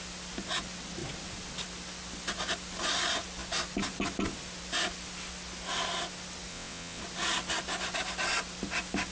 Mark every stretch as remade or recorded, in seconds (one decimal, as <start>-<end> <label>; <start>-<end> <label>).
0.0-6.5 recorded; 6.5-7.0 remade; 7.0-9.1 recorded

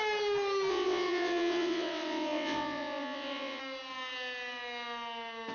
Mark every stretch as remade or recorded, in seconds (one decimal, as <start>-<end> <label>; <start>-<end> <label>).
0.0-0.7 recorded; 0.7-3.6 remade; 3.6-5.5 recorded

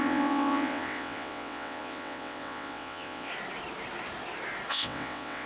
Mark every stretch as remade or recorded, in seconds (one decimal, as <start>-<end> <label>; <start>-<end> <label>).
0.0-3.3 remade; 3.3-4.7 recorded; 4.7-5.5 remade

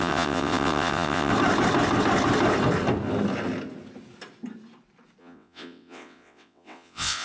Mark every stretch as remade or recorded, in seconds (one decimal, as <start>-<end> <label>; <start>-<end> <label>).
0.0-1.3 remade; 1.3-5.2 recorded; 5.2-7.2 remade

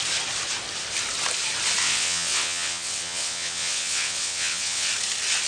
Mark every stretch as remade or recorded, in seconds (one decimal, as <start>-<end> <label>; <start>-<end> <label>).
0.0-1.8 recorded; 1.8-4.9 remade; 4.9-5.5 recorded

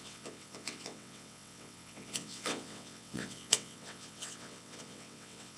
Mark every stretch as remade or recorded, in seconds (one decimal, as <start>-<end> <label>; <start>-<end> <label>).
0.0-5.6 remade

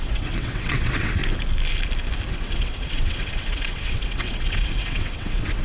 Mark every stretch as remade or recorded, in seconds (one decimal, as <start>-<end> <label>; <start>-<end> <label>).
0.0-1.2 remade; 1.2-2.3 recorded; 2.3-5.6 remade